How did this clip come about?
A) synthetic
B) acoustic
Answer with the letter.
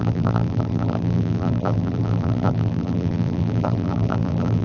A